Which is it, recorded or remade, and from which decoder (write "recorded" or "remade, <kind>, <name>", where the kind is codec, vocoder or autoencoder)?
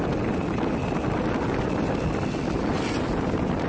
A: recorded